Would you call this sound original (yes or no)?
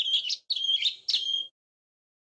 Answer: yes